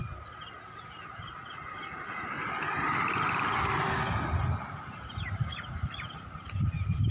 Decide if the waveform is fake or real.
real